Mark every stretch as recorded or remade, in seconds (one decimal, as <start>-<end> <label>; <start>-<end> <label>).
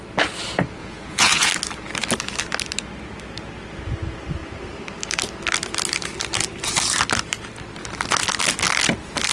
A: 0.0-0.8 recorded; 0.8-1.5 remade; 1.5-9.3 recorded